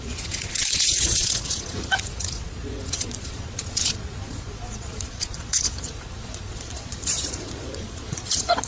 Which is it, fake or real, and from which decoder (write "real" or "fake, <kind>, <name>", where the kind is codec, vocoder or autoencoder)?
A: fake, vocoder, Vocos